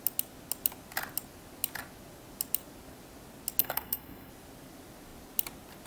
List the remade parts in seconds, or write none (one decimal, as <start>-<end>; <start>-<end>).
3.6-4.3